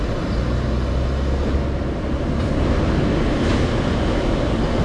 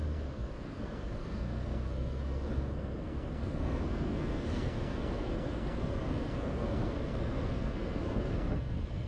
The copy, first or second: second